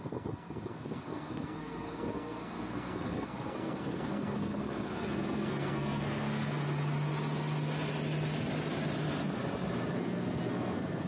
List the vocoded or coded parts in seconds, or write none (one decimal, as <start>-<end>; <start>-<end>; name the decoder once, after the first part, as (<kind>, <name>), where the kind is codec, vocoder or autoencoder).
0.0-6.6 (codec, SNAC); 9.9-11.1